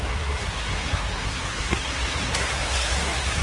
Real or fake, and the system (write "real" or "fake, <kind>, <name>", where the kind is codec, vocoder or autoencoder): fake, codec, SNAC